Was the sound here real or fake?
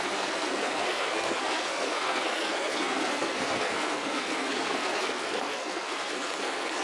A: fake